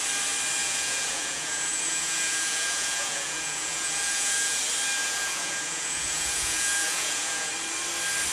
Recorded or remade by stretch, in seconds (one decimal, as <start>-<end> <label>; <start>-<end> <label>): 0.0-0.6 recorded; 0.6-4.6 remade; 4.6-5.0 recorded; 5.0-7.5 remade; 7.5-8.3 recorded